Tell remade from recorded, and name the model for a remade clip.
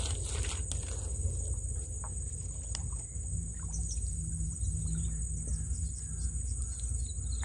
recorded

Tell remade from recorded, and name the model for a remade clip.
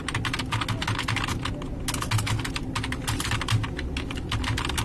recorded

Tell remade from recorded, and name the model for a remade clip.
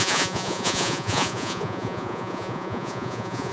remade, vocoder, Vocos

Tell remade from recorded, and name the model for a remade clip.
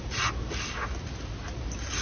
recorded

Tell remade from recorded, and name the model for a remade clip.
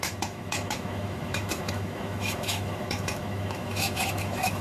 remade, autoencoder, DAC-VAE